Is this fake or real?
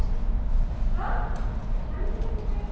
real